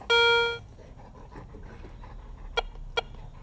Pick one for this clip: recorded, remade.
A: recorded